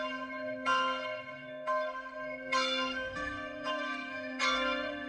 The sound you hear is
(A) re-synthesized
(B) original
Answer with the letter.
A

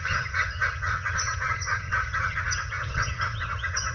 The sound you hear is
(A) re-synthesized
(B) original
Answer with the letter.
A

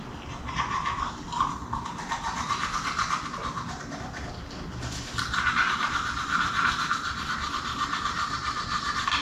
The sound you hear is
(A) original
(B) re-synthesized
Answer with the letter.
A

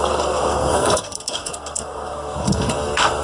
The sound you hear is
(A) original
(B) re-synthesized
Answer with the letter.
B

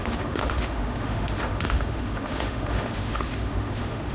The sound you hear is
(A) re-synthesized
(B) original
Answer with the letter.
A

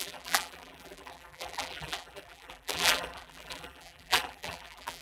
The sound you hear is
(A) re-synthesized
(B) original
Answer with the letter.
A